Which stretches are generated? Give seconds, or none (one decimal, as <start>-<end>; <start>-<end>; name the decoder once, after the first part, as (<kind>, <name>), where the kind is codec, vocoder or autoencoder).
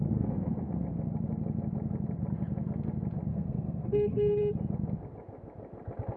3.3-4.4 (codec, SNAC)